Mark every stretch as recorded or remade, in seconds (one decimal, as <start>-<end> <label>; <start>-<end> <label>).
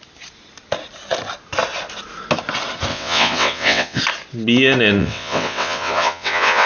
0.0-2.9 recorded; 2.9-4.0 remade; 4.0-5.0 recorded; 5.0-6.7 remade